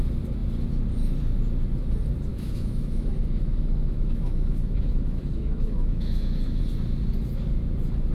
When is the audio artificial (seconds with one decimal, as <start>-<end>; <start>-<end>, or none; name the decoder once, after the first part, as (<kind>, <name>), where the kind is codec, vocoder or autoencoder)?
2.3-6.6 (autoencoder, DAC-VAE)

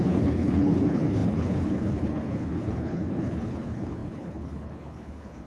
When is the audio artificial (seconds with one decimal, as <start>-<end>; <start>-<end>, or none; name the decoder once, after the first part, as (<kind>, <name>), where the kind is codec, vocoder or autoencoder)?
0.0-5.5 (codec, HILCodec)

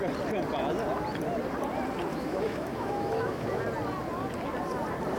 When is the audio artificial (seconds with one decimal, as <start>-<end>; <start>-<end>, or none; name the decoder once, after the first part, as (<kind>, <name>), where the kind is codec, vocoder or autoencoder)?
2.1-3.6 (autoencoder, DAC-VAE)